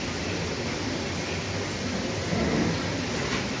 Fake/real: real